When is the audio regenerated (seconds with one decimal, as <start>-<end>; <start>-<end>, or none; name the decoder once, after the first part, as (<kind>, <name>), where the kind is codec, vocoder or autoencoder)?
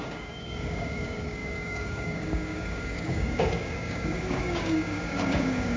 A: 0.0-5.8 (codec, DAC)